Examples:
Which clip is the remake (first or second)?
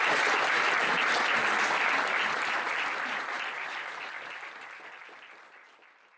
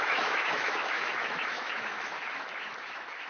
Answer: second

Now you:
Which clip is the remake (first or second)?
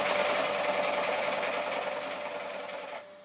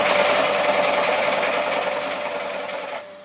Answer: second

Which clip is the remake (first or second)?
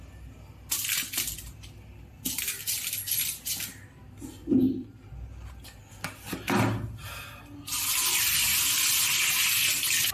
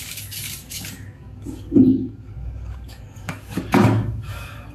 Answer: second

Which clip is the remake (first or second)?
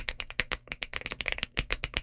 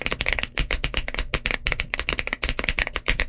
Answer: first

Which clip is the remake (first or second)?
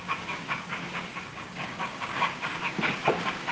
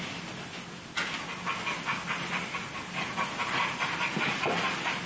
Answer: first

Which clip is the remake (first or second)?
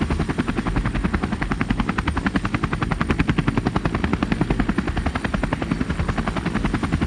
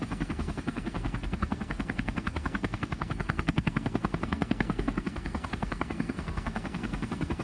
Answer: second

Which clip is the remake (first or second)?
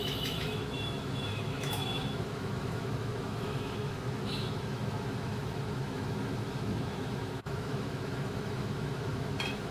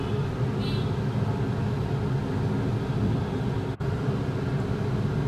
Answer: first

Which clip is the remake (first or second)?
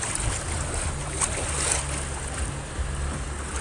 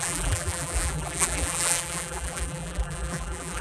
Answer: second